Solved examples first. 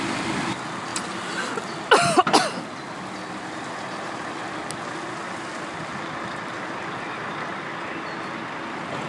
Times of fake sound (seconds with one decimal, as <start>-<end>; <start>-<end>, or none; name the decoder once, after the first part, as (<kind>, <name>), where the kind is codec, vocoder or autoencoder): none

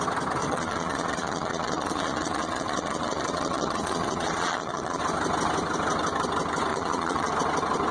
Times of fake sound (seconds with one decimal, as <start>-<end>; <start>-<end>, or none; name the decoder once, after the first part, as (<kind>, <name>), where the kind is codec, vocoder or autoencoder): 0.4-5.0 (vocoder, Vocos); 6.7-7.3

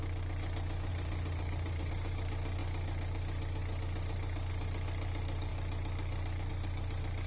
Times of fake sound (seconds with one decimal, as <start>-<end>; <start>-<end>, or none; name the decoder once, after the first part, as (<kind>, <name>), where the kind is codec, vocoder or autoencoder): 0.9-1.9 (vocoder, BigVGAN v2)

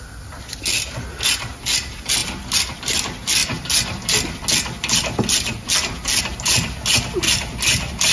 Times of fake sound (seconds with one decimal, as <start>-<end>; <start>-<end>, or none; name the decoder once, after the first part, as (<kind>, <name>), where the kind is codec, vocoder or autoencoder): none

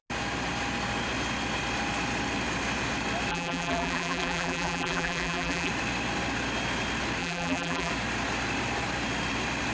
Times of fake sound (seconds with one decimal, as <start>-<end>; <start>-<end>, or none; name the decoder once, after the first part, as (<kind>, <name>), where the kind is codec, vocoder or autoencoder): 3.3-5.7 (vocoder, BigVGAN v2); 7.2-7.9

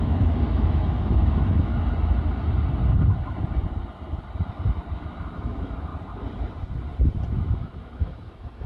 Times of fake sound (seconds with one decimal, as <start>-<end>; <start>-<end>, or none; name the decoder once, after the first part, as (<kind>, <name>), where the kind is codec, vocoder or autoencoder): 0.0-1.7 (autoencoder, DAC-VAE); 5.0-5.9; 7.3-8.7

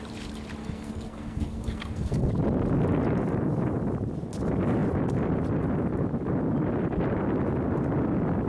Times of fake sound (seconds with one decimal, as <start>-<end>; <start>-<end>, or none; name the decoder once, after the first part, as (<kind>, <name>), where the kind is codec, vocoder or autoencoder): 0.6-2.3 (codec, SNAC)

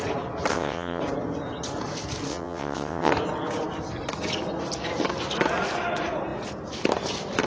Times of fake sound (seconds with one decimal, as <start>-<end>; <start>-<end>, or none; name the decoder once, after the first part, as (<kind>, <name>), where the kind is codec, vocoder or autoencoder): 0.5-1.0 (vocoder, WaveNeXt); 2.3-3.1